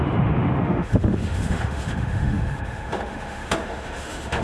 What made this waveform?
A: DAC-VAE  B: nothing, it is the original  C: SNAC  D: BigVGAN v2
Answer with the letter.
A